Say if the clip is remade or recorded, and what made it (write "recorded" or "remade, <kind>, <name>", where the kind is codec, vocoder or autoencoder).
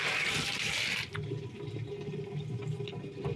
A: recorded